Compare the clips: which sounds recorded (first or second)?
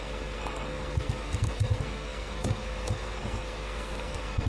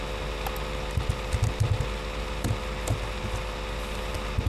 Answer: second